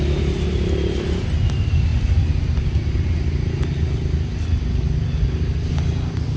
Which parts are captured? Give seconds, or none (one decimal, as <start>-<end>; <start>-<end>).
0.0-6.4